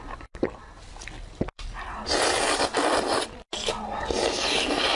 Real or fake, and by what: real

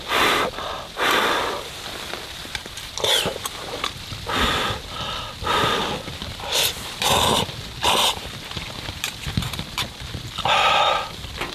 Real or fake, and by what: fake, vocoder, BigVGAN v2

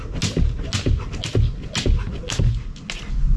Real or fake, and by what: real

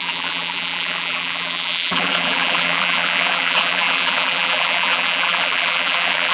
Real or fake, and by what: fake, vocoder, BigVGAN v2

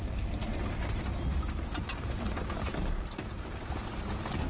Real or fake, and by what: real